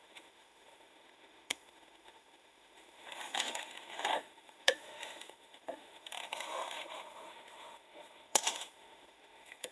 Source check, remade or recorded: remade